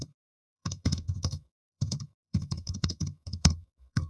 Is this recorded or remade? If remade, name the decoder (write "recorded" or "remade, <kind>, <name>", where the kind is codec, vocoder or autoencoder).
remade, codec, SNAC